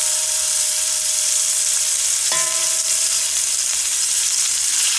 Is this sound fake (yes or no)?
yes